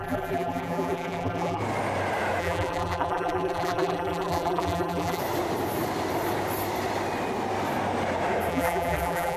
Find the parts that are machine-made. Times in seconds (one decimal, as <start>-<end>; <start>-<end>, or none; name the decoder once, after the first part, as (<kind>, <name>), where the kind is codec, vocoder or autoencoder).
0.0-1.6 (vocoder, BigVGAN v2); 2.4-5.2; 8.5-9.4